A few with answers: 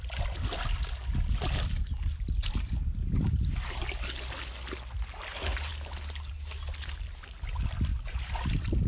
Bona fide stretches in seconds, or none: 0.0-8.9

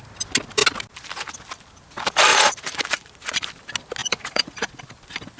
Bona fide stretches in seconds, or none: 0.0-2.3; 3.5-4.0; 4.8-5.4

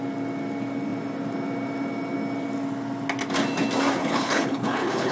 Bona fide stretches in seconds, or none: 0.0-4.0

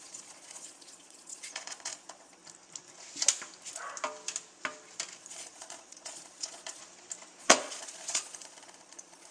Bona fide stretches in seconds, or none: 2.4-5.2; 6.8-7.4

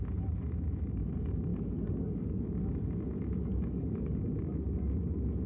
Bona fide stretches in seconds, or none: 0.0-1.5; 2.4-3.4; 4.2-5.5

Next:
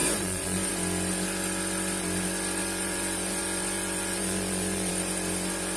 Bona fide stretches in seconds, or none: 0.7-2.6; 4.9-5.8

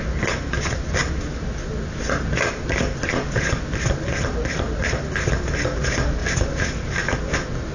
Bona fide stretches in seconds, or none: 0.0-7.7